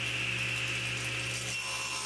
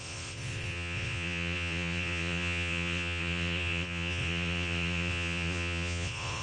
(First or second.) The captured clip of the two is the first